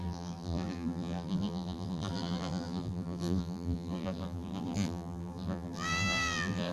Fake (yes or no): yes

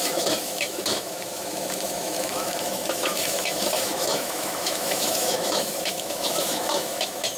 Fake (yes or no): yes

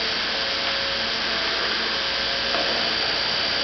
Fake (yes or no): no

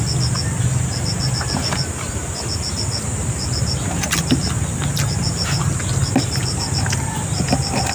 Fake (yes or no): no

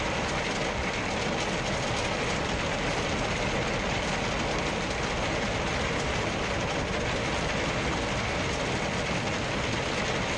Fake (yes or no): no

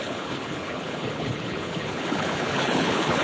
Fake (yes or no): yes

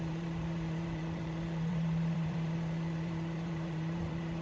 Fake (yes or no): yes